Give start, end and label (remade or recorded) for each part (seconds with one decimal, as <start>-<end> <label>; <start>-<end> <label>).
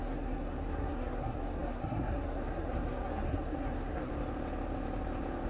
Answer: 0.0-4.1 remade; 4.1-5.5 recorded